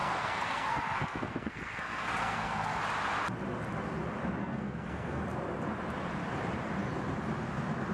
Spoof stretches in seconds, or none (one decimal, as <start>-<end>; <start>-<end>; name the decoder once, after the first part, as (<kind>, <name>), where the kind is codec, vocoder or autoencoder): 0.0-2.8 (codec, SNAC); 4.4-5.2